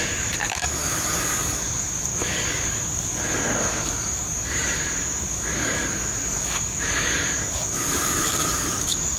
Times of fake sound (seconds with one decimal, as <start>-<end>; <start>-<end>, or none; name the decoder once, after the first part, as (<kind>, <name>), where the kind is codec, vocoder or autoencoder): 0.0-9.2 (codec, DAC)